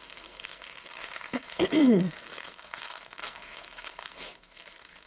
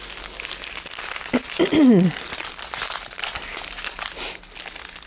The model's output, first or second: first